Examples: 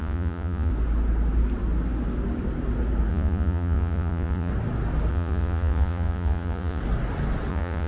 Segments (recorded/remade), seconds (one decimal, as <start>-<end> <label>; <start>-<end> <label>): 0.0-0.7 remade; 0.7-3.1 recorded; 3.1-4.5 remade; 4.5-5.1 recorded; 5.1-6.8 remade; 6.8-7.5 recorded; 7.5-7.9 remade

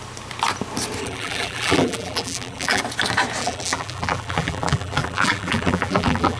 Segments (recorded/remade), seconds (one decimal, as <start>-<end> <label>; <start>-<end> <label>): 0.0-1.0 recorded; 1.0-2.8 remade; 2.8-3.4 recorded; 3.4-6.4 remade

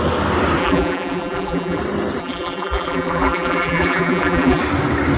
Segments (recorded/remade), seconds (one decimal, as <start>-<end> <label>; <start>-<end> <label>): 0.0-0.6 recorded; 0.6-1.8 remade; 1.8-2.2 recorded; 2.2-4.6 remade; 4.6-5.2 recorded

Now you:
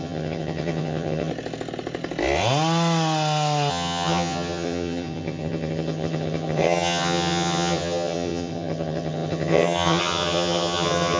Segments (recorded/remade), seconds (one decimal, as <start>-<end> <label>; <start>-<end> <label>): 0.0-1.3 remade; 1.3-3.7 recorded; 3.7-11.2 remade

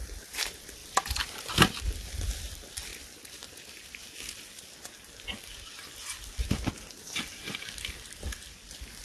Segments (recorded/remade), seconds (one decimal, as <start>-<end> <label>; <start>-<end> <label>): 0.0-0.8 recorded; 0.8-1.8 remade; 1.8-2.9 recorded; 2.9-4.0 remade; 4.0-7.3 recorded; 7.3-8.0 remade; 8.0-9.0 recorded

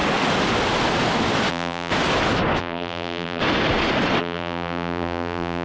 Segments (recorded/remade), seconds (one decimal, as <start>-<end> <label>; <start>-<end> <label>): 0.0-1.5 recorded; 1.5-1.9 remade; 1.9-2.6 recorded; 2.6-3.4 remade; 3.4-4.2 recorded; 4.2-5.6 remade

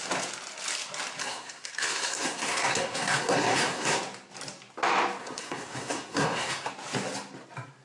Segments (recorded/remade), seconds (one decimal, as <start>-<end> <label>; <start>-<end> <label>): 0.0-1.2 recorded; 1.2-4.0 remade; 4.0-5.2 recorded; 5.2-6.7 remade; 6.7-7.8 recorded

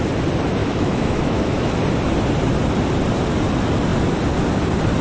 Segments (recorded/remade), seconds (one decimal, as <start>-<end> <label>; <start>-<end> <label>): 0.0-0.6 recorded; 0.6-1.8 remade; 1.8-5.0 recorded